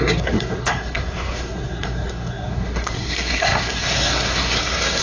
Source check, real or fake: fake